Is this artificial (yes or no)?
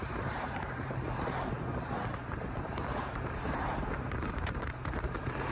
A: yes